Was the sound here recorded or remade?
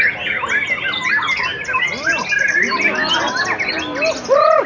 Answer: recorded